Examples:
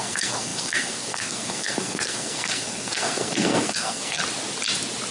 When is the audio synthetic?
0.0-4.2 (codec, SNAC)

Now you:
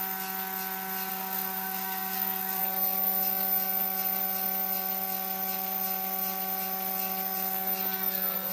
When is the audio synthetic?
1.1-2.6 (codec, SNAC)

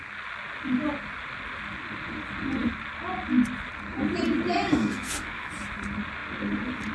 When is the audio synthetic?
4.7-5.5 (codec, SNAC)

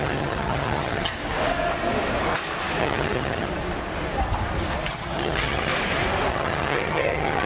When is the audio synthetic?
0.0-1.1 (vocoder, HiFi-GAN); 2.8-3.5; 4.9-5.7; 6.3-7.5

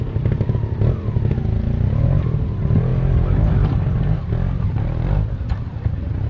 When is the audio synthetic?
none